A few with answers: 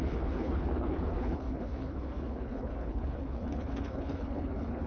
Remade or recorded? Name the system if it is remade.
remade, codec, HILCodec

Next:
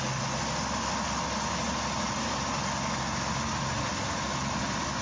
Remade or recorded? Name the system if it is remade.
recorded